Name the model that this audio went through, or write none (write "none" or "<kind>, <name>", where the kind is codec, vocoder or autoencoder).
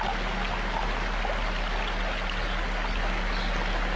none